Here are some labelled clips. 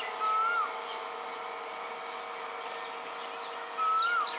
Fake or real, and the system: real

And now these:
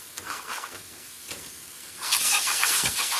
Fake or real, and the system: fake, codec, SNAC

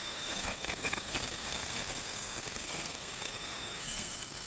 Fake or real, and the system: fake, codec, SNAC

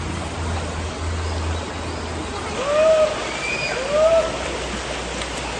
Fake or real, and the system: real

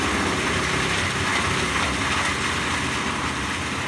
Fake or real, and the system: real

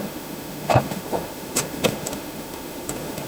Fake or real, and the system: fake, autoencoder, DAC-VAE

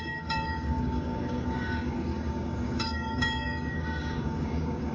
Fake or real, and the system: fake, codec, DAC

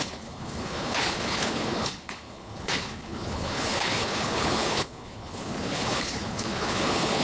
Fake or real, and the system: fake, codec, HILCodec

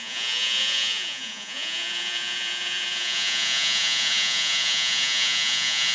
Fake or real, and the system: fake, vocoder, Vocos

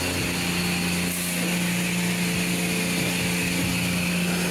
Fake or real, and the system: real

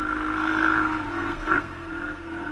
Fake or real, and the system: fake, codec, SNAC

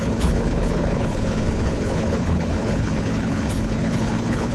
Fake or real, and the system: fake, codec, HILCodec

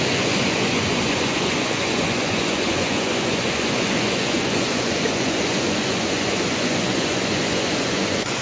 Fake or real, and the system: fake, vocoder, Vocos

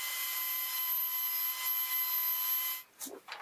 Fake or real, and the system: real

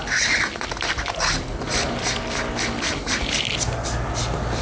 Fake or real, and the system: real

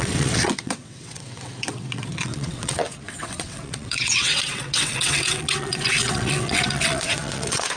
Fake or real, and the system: fake, vocoder, WaveNeXt